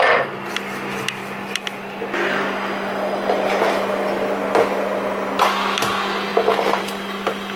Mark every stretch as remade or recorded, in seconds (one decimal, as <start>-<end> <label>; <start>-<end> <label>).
0.0-7.6 recorded